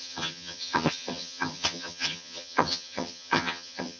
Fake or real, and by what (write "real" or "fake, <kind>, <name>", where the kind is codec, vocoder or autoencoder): fake, vocoder, HiFi-GAN